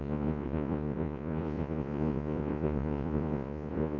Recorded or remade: remade